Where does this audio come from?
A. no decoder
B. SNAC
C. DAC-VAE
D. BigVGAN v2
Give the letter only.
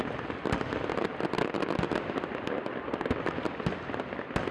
A